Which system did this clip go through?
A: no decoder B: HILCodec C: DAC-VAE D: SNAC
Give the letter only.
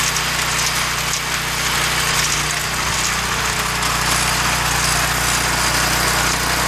A